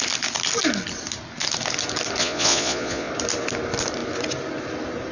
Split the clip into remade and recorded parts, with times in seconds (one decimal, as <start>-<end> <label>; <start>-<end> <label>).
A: 0.0-2.2 recorded; 2.2-3.1 remade; 3.1-5.1 recorded